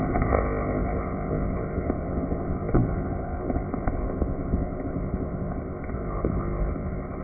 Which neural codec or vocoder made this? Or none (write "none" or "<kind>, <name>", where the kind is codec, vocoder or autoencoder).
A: codec, ZipCodec